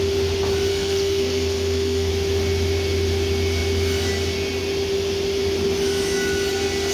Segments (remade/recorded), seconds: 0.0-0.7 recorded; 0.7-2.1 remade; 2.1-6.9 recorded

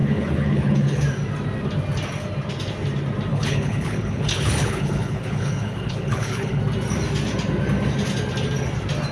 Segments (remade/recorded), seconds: 0.0-1.0 remade; 1.0-3.3 recorded; 3.3-6.6 remade; 6.6-9.1 recorded

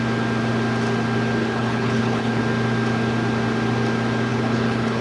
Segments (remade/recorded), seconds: 0.0-1.4 recorded; 1.4-2.4 remade; 2.4-4.3 recorded; 4.3-5.0 remade

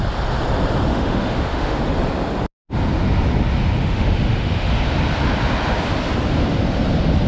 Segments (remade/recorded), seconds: 0.0-0.9 recorded; 0.9-1.8 remade; 1.8-3.8 recorded; 3.8-4.7 remade; 4.7-7.3 recorded

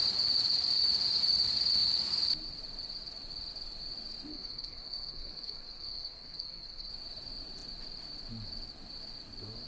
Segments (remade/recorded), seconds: 0.0-4.3 recorded; 4.3-6.9 remade; 6.9-9.7 recorded

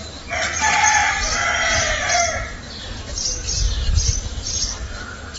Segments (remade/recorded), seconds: 0.0-5.4 remade

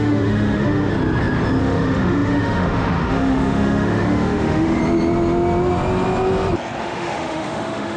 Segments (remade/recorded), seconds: 0.0-0.9 remade; 0.9-1.6 recorded; 1.6-4.8 remade; 4.8-6.8 recorded; 6.8-8.0 remade

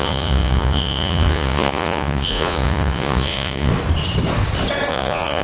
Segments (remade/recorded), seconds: 0.0-3.7 remade; 3.7-4.9 recorded; 4.9-5.4 remade